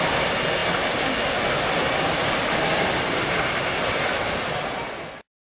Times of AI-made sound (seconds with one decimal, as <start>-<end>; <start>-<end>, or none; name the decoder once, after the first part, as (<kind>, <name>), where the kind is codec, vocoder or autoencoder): none